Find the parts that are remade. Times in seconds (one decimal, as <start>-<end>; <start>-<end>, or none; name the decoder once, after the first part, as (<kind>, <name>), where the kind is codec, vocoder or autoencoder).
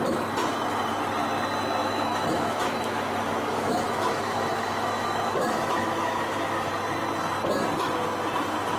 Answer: 1.8-6.7 (autoencoder, DAC-VAE)